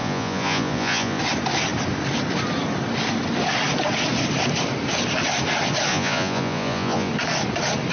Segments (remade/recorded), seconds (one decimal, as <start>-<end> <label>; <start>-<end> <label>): 0.0-1.2 remade; 1.2-5.9 recorded; 5.9-7.1 remade; 7.1-7.9 recorded